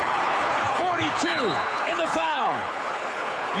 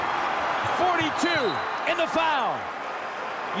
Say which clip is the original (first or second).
second